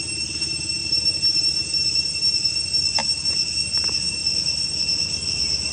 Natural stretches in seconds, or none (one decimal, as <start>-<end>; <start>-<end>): 0.0-5.7